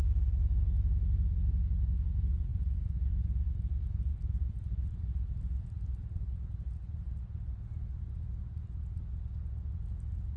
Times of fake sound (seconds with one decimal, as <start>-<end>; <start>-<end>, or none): none